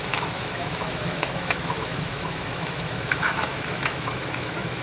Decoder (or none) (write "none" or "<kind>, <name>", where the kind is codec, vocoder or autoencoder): autoencoder, DAC-VAE